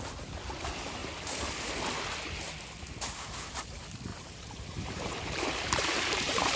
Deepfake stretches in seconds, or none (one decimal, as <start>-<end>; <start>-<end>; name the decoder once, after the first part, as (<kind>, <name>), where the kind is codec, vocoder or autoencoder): 1.0-1.5 (vocoder, BigVGAN v2); 4.1-6.6